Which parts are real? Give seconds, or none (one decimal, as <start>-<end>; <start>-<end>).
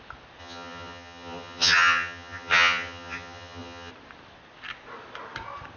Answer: 0.0-0.4; 3.9-5.8